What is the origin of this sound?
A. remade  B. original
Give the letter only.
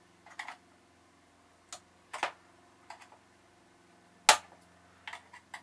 B